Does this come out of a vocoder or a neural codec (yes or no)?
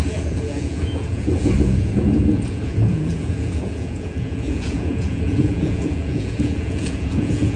yes